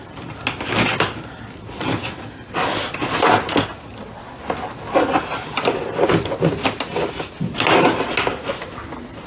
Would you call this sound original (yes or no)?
yes